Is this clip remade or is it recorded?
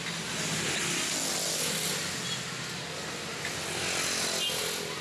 recorded